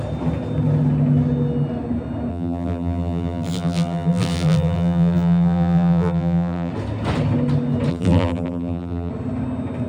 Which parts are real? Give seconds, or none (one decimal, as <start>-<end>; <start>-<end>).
0.0-2.3; 6.7-7.9; 9.1-9.9